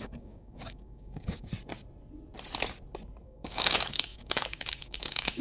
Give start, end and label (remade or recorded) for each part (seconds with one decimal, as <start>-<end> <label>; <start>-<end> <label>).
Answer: 0.0-1.5 remade; 1.5-3.2 recorded; 3.2-5.4 remade

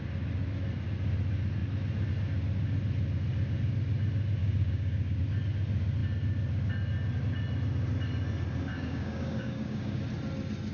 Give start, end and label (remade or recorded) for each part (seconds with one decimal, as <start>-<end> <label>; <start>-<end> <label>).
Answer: 0.0-4.4 recorded; 4.4-5.2 remade; 5.2-8.7 recorded; 8.7-10.0 remade; 10.0-10.7 recorded

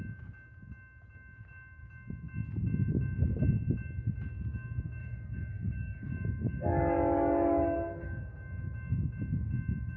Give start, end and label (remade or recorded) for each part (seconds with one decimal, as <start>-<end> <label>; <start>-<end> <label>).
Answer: 0.0-5.0 recorded; 5.0-8.2 remade; 8.2-10.0 recorded